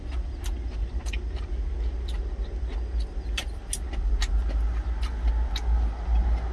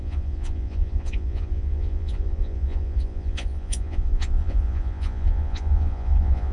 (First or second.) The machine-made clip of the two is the second